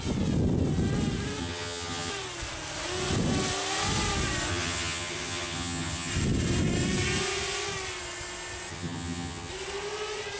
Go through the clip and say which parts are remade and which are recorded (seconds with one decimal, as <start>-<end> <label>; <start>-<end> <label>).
0.0-1.4 recorded; 1.4-2.1 remade; 2.1-4.5 recorded; 4.5-6.1 remade; 6.1-8.7 recorded; 8.7-9.5 remade; 9.5-10.4 recorded